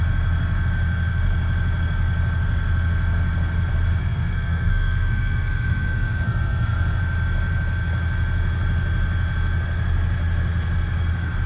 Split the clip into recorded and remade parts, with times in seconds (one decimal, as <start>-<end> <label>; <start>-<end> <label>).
0.0-4.0 recorded; 4.0-7.0 remade; 7.0-11.5 recorded